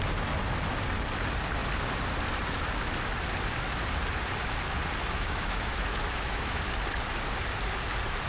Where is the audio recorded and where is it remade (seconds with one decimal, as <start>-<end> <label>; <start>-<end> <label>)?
0.0-5.0 recorded; 5.0-6.6 remade; 6.6-8.3 recorded